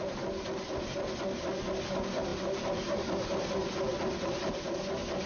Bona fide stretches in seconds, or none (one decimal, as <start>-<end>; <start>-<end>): 0.0-2.3; 3.0-3.9; 4.6-5.3